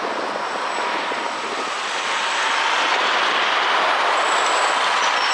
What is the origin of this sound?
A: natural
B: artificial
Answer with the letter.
A